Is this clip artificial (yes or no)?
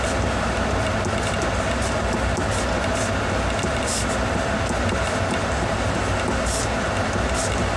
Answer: no